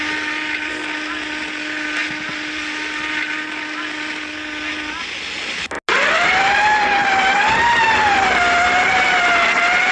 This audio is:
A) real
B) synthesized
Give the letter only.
A